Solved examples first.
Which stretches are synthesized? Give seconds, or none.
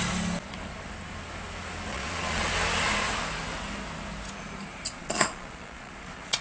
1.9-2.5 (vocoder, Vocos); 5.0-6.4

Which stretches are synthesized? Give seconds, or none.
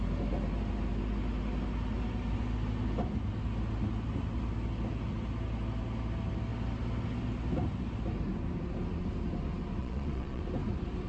9.8-10.4 (vocoder, Vocos)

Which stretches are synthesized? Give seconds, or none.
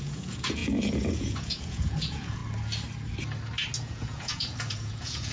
0.0-2.4 (vocoder, Vocos); 3.8-5.3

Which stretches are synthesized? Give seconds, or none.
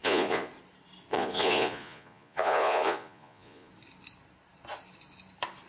0.0-0.5 (vocoder, Vocos); 1.1-3.7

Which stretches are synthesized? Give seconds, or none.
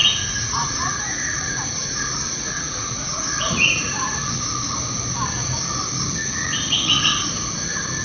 0.0-4.4 (vocoder, Vocos); 6.2-7.0